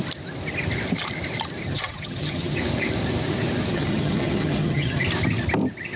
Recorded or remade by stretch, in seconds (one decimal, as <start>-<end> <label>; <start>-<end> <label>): 0.0-1.6 recorded; 1.6-2.6 remade; 2.6-3.7 recorded; 3.7-5.0 remade; 5.0-6.0 recorded

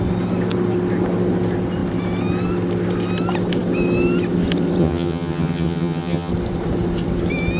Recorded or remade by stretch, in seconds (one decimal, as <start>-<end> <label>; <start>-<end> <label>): 0.0-4.8 recorded; 4.8-6.3 remade; 6.3-7.6 recorded

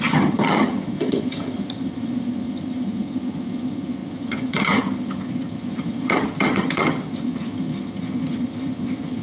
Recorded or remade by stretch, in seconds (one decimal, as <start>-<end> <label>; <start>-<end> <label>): 0.0-9.2 remade

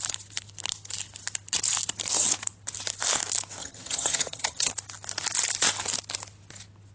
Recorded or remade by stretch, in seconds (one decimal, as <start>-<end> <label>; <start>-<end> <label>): 0.0-3.6 recorded; 3.6-4.7 remade; 4.7-6.9 recorded

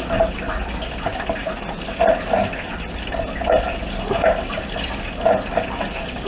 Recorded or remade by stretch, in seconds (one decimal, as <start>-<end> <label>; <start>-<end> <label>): 0.0-6.3 recorded

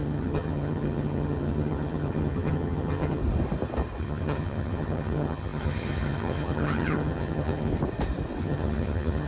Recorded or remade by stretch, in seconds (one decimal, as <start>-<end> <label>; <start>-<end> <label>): 0.0-3.2 remade; 3.2-4.0 recorded; 4.0-7.7 remade; 7.7-8.4 recorded; 8.4-9.3 remade